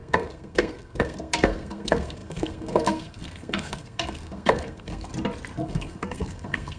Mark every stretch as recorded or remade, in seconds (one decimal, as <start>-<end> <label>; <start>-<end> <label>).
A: 0.0-5.1 remade; 5.1-5.6 recorded; 5.6-6.8 remade